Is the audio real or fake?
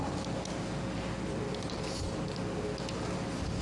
real